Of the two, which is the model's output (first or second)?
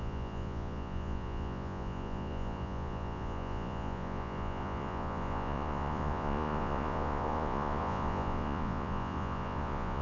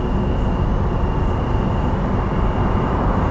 first